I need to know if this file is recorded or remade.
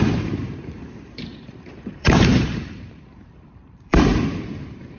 remade